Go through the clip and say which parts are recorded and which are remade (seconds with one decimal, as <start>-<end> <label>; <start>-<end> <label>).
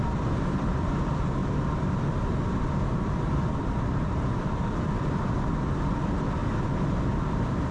0.0-6.4 remade; 6.4-7.2 recorded; 7.2-7.7 remade